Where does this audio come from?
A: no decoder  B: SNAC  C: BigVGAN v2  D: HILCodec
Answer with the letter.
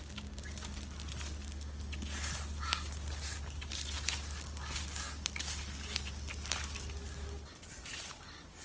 A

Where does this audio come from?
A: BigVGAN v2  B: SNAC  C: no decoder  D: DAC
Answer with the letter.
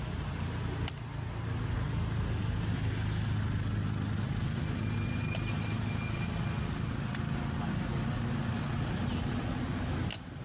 C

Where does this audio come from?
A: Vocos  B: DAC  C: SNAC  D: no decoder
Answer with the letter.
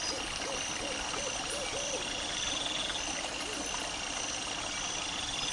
D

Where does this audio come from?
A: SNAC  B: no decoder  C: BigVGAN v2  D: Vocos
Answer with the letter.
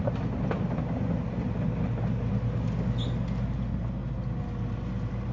B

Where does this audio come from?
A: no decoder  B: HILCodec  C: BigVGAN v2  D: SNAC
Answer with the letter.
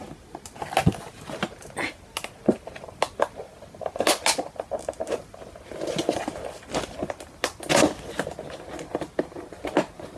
A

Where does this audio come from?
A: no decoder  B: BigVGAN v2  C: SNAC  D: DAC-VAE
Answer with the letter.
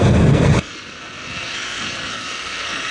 C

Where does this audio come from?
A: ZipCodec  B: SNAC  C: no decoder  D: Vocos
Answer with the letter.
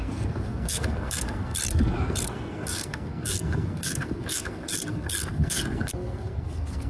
B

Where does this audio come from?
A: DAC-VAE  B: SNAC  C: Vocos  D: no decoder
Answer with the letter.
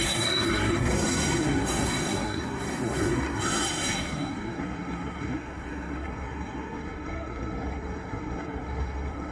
B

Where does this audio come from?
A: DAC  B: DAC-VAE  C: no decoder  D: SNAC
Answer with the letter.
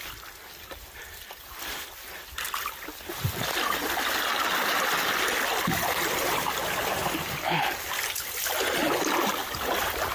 C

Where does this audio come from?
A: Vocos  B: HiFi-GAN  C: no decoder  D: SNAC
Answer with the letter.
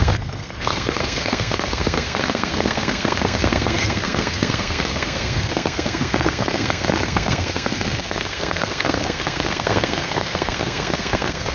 D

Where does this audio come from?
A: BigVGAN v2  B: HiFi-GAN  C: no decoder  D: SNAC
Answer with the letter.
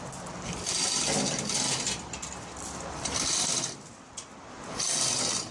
C